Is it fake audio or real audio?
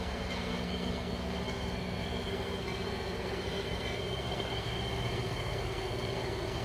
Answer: fake